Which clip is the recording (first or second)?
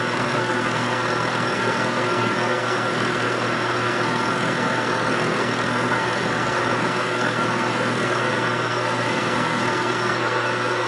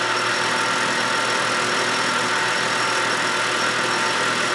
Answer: second